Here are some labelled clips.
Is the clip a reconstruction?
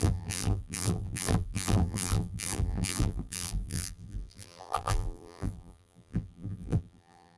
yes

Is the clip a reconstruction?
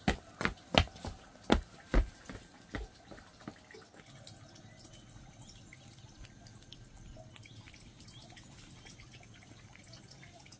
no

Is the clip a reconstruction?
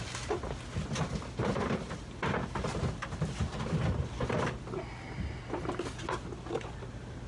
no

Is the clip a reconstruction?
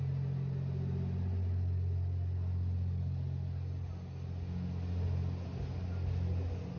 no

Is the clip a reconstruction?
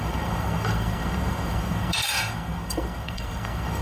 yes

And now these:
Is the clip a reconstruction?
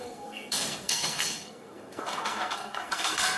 yes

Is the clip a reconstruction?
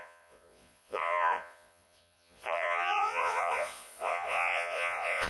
yes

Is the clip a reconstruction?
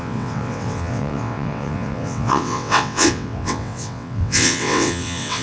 yes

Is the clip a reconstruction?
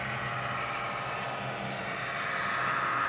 no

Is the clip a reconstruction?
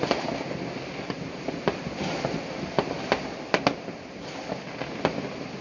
no